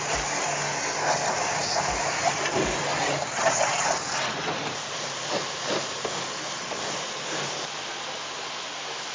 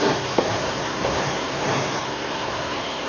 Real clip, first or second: first